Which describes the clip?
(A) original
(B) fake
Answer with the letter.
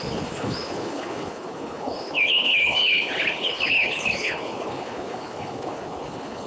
B